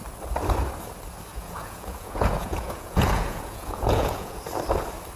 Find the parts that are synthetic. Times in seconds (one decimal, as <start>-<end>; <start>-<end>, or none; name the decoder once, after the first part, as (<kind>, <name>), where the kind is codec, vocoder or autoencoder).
1.3-4.4 (vocoder, Vocos)